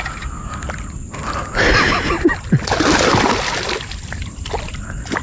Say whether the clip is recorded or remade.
recorded